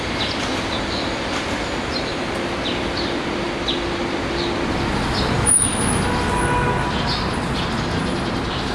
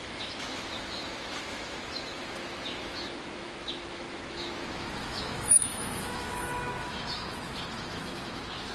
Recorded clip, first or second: first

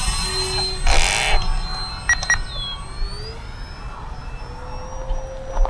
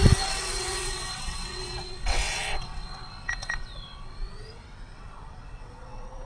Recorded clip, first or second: first